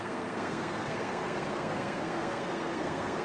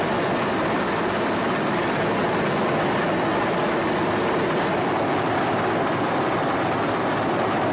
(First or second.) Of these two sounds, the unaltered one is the second